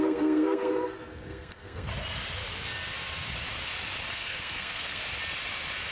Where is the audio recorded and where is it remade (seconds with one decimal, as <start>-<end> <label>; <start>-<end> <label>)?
0.0-1.9 remade; 1.9-4.1 recorded; 4.1-5.0 remade; 5.0-5.9 recorded